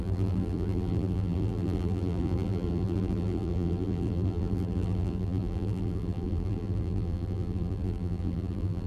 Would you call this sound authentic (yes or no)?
no